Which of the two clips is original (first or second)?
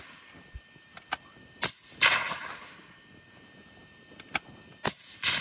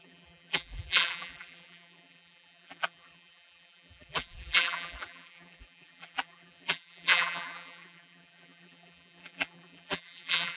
first